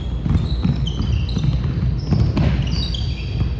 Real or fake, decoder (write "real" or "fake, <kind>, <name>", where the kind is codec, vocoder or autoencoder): real